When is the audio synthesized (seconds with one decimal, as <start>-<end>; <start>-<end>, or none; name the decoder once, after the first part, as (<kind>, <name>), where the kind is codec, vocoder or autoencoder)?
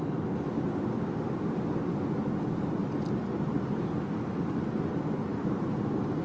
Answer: 2.8-4.7 (vocoder, BigVGAN v2); 5.3-5.8